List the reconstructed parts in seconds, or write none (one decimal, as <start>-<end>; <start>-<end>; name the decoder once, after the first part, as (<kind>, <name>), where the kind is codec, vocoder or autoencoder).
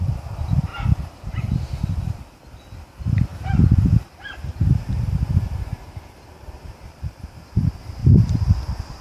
0.7-1.6 (vocoder, BigVGAN v2); 3.3-7.5